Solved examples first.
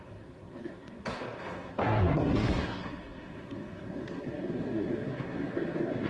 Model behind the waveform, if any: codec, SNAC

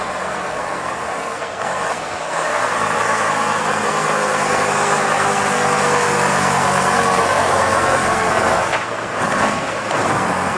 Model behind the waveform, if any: codec, SNAC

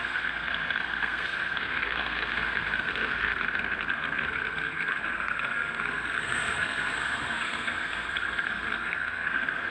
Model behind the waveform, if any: codec, SNAC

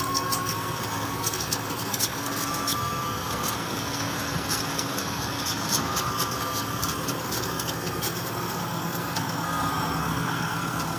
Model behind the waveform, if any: codec, SNAC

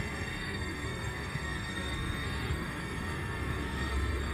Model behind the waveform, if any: codec, SNAC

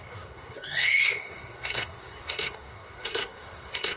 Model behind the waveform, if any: codec, SNAC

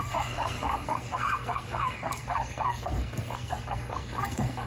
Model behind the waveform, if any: codec, SNAC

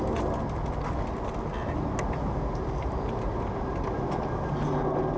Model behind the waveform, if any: none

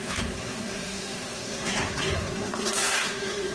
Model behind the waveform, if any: codec, SNAC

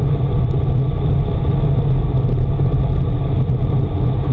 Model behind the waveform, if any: none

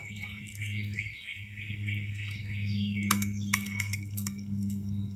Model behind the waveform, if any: codec, SNAC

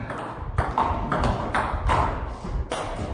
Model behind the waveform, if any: none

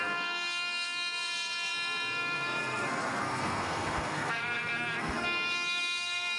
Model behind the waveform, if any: codec, SNAC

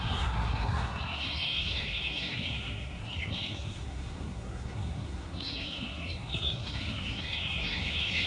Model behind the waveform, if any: codec, SNAC